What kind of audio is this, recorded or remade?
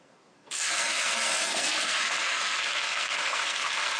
remade